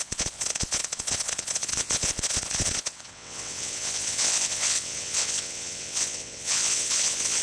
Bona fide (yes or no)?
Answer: no